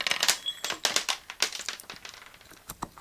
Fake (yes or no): no